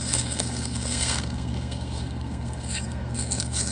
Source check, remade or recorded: remade